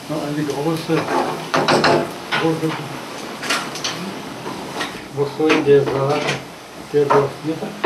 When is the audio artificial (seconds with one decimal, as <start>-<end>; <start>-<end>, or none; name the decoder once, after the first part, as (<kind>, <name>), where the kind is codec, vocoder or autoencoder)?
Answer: 0.0-7.9 (codec, DAC)